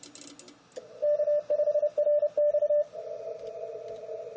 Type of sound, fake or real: real